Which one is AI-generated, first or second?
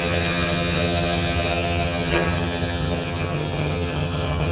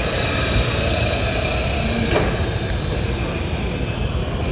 first